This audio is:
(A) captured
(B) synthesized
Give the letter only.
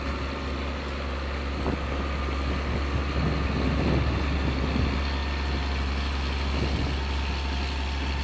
A